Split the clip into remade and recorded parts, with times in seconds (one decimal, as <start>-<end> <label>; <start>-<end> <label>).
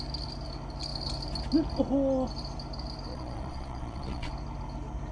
0.0-3.1 recorded; 3.1-4.3 remade; 4.3-5.1 recorded